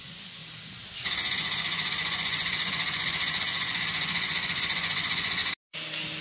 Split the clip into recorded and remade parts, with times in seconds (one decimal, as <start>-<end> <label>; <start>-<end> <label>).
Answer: 0.0-0.4 remade; 0.4-1.0 recorded; 1.0-5.4 remade; 5.4-6.2 recorded